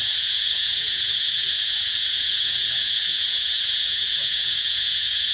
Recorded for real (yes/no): no